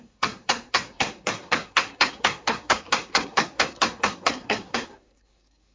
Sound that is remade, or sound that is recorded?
remade